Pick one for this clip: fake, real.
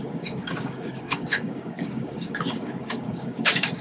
fake